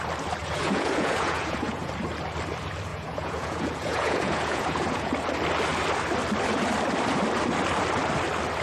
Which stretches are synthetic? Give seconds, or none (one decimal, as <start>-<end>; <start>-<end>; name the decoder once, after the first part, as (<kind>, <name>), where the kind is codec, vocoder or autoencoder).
0.4-1.9 (vocoder, Vocos); 2.9-5.1